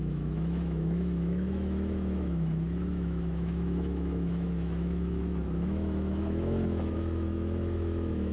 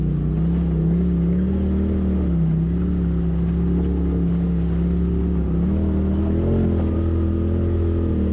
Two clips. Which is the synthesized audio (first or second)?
first